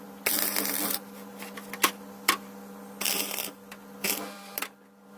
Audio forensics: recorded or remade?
remade